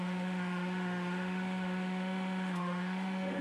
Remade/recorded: remade